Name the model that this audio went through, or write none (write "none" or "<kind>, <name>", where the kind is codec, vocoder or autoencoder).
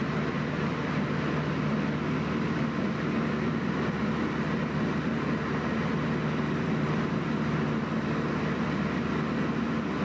none